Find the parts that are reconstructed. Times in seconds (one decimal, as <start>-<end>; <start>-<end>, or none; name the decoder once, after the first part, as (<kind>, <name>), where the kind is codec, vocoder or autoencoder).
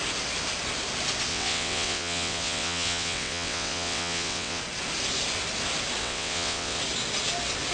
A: 1.3-4.6 (vocoder, WaveNeXt); 6.0-6.8